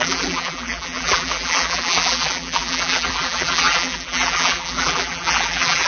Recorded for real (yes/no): no